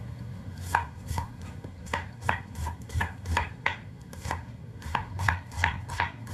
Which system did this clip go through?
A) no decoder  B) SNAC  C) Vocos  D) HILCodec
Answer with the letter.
B